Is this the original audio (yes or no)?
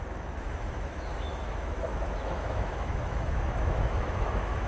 no